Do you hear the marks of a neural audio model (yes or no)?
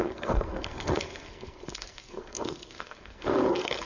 yes